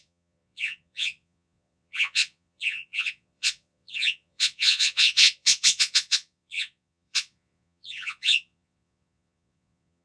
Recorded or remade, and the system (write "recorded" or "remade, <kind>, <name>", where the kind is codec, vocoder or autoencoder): remade, vocoder, Vocos